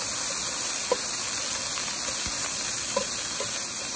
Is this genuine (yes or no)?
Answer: yes